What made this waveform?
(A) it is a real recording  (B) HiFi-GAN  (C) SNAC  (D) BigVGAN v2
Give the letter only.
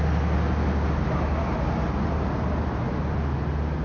A